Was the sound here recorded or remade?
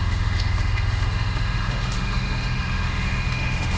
remade